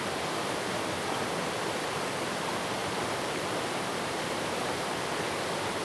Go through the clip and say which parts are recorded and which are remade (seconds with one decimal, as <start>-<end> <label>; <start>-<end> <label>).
0.0-2.8 recorded; 2.8-5.1 remade; 5.1-5.8 recorded